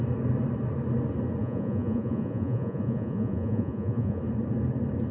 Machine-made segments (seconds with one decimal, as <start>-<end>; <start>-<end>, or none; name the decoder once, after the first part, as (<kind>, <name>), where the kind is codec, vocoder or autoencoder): 1.4-4.2 (vocoder, Vocos)